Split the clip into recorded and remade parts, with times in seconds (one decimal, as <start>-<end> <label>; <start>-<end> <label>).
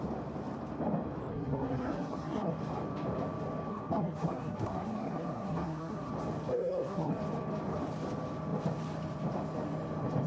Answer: 0.0-1.3 recorded; 1.3-2.5 remade; 2.5-3.7 recorded; 3.7-6.1 remade; 6.1-6.5 recorded; 6.5-7.1 remade; 7.1-10.3 recorded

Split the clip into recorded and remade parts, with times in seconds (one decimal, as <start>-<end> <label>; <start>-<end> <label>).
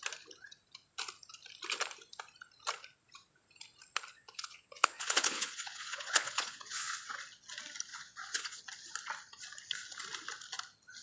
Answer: 0.0-4.1 recorded; 4.1-7.1 remade; 7.1-7.9 recorded; 7.9-8.6 remade; 8.6-11.0 recorded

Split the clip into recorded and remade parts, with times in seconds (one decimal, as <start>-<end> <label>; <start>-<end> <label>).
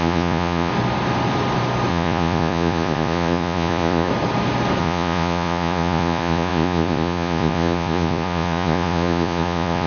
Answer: 0.0-0.7 remade; 0.7-1.9 recorded; 1.9-4.1 remade; 4.1-4.8 recorded; 4.8-9.9 remade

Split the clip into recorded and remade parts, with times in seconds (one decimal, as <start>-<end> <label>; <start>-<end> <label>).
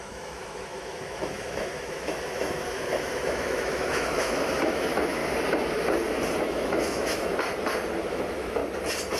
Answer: 0.0-5.2 remade; 5.2-6.4 recorded; 6.4-7.3 remade; 7.3-8.1 recorded; 8.1-8.6 remade; 8.6-9.2 recorded